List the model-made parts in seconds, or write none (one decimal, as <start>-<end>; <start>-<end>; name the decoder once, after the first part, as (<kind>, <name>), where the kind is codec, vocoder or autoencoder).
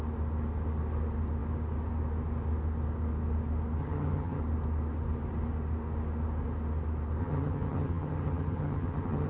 3.8-4.4 (vocoder, HiFi-GAN); 7.2-9.3